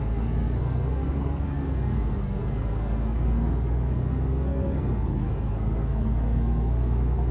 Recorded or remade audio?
remade